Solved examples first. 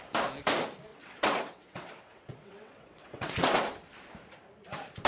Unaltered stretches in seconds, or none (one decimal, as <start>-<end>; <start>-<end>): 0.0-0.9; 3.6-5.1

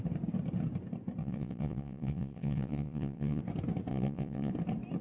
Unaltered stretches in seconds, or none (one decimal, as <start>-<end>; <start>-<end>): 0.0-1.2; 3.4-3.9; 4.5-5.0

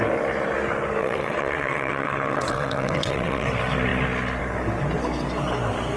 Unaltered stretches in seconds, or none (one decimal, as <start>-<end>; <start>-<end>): 0.0-1.0; 3.5-6.0